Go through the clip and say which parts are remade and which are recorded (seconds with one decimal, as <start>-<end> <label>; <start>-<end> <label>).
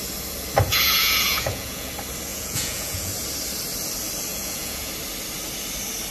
0.0-0.7 recorded; 0.7-1.9 remade; 1.9-2.3 recorded; 2.3-3.1 remade; 3.1-4.3 recorded; 4.3-4.9 remade; 4.9-6.1 recorded